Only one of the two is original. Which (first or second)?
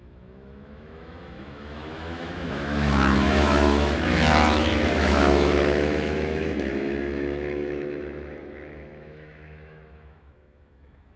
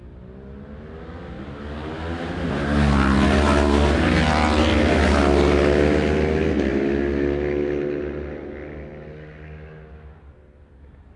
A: second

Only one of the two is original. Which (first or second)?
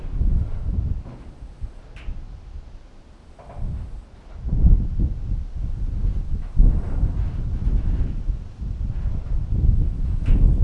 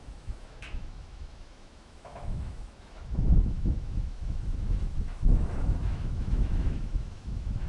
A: first